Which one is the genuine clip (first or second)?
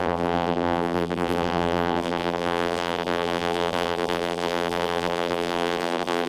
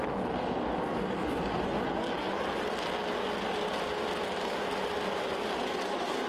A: second